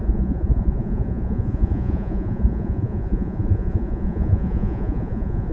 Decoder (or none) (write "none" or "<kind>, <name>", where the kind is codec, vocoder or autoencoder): vocoder, Vocos